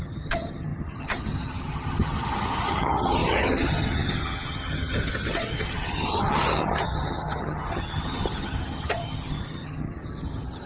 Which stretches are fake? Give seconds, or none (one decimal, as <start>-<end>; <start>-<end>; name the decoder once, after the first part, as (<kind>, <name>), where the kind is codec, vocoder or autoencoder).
0.0-10.7 (vocoder, HiFi-GAN)